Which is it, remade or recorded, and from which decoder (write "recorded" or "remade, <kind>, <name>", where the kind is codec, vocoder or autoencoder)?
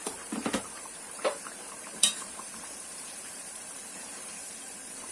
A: remade, vocoder, BigVGAN v2